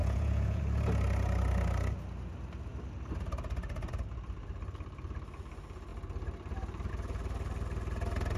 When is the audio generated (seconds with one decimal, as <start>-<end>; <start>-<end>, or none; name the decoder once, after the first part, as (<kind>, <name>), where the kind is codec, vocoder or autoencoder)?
0.0-0.6 (vocoder, Vocos)